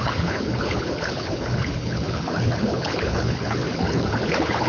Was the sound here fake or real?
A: fake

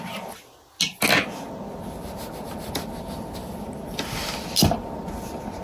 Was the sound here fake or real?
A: real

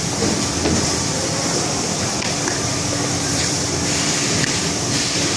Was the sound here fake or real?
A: fake